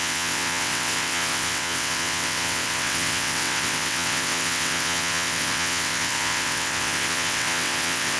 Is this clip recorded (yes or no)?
no